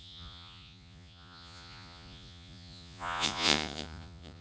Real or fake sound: fake